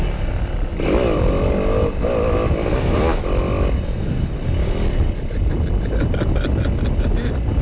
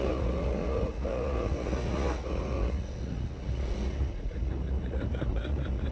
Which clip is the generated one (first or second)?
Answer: second